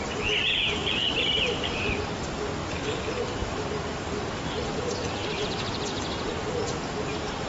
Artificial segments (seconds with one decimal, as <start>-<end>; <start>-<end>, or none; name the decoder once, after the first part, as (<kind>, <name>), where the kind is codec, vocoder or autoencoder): 0.8-1.9 (vocoder, BigVGAN v2); 5.2-6.1